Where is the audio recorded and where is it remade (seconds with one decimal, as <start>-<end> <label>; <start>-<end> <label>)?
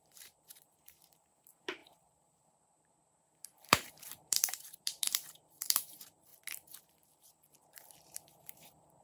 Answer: 0.0-6.3 remade; 6.3-6.8 recorded; 6.8-9.0 remade